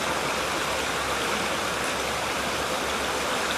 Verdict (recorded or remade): recorded